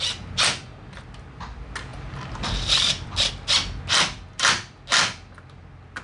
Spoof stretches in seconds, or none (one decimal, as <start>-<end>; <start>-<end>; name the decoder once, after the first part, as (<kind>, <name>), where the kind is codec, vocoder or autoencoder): 1.9-3.3 (vocoder, BigVGAN v2)